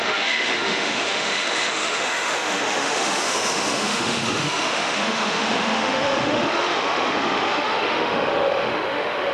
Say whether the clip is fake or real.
fake